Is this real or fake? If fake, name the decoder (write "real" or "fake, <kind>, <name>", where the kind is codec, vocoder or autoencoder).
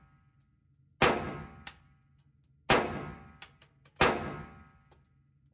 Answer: real